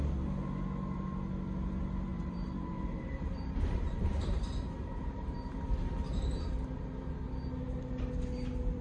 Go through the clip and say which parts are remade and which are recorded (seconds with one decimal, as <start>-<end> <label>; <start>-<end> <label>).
0.0-2.1 recorded; 2.1-5.5 remade; 5.5-8.8 recorded